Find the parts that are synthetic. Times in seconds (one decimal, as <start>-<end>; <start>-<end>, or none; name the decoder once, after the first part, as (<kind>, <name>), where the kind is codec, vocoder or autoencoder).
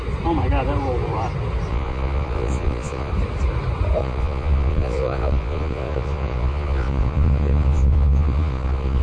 1.7-3.1 (vocoder, Vocos); 4.0-9.0